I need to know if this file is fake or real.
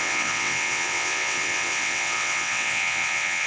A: fake